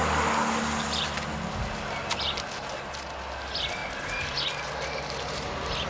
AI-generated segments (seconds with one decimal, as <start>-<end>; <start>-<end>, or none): none